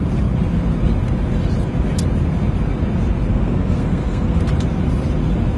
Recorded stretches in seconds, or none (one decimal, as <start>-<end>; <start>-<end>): 0.0-3.3; 4.4-5.6